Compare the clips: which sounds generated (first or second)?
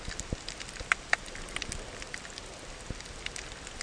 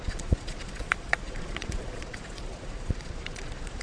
second